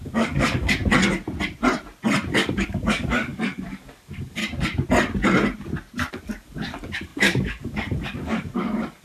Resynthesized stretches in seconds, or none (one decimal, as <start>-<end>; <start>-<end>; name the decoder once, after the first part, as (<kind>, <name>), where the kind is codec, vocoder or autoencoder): 0.0-0.8 (codec, DAC); 2.3-4.4; 6.1-9.0